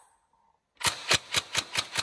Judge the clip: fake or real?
real